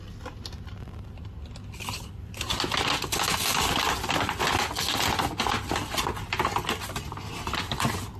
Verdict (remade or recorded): recorded